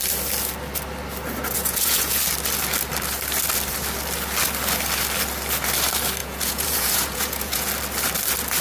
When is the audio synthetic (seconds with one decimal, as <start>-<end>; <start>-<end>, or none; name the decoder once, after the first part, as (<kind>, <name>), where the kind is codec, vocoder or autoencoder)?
1.6-2.2 (vocoder, Vocos); 6.2-7.7